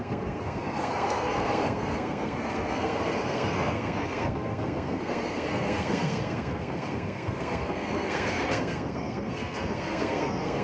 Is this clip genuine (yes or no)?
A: no